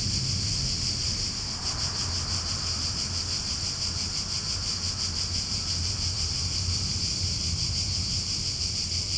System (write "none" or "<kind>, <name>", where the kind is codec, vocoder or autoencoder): none